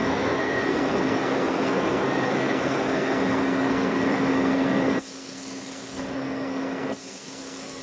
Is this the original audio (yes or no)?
no